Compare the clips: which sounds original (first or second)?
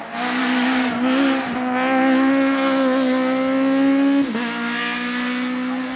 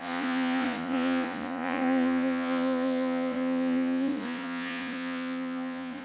first